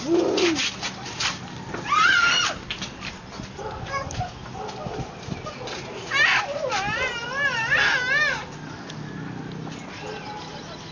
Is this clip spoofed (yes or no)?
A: no